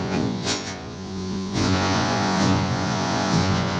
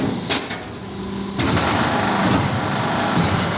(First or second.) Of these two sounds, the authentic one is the second